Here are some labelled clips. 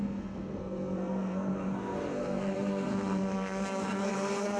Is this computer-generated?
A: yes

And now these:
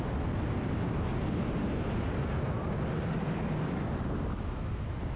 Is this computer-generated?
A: no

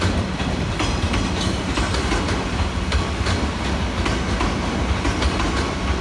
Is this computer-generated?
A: no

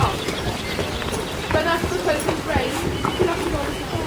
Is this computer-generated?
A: no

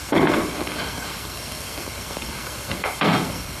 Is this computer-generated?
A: yes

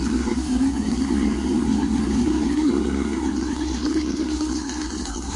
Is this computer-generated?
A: yes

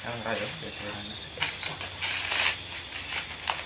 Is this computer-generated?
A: no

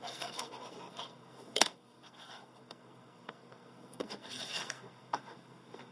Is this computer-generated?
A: yes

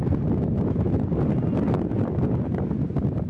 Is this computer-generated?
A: no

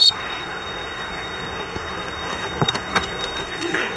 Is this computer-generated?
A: yes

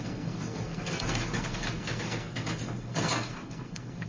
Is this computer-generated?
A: yes